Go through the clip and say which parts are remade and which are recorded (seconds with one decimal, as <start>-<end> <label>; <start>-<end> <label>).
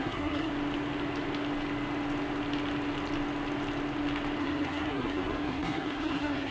0.0-0.5 remade; 0.5-4.4 recorded; 4.4-6.5 remade